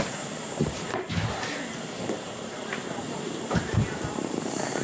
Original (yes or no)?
no